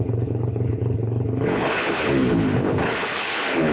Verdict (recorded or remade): remade